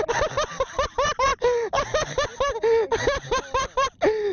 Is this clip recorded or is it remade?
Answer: recorded